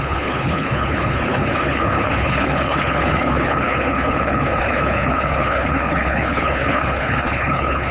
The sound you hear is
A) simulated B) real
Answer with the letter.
A